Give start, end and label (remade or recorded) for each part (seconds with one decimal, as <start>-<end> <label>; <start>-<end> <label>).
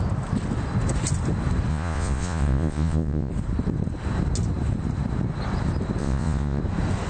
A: 0.0-1.7 recorded; 1.7-3.3 remade; 3.3-6.0 recorded; 6.0-6.6 remade; 6.6-7.1 recorded